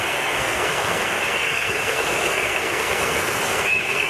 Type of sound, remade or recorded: remade